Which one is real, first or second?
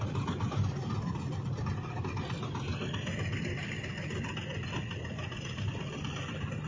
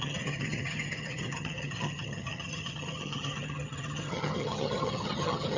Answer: first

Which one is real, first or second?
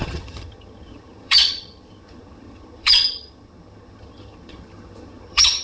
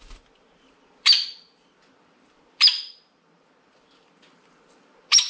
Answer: second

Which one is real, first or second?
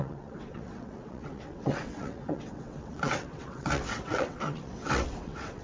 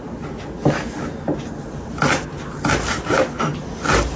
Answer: second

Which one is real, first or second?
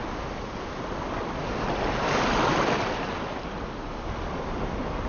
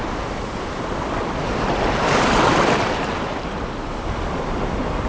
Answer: first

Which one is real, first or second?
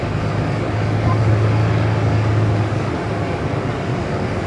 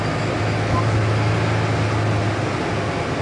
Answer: second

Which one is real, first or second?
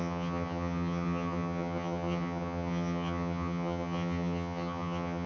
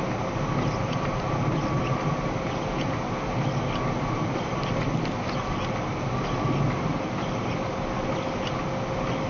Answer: second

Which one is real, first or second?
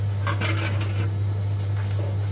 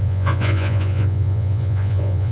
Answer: first